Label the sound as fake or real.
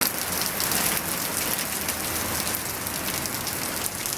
real